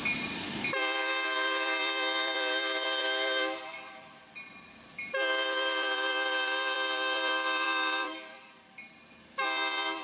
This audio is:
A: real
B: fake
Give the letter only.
B